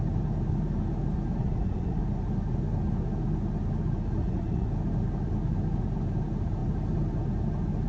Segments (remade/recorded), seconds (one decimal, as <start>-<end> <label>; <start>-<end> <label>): 0.0-1.4 recorded; 1.4-2.0 remade; 2.0-4.2 recorded; 4.2-4.7 remade; 4.7-7.9 recorded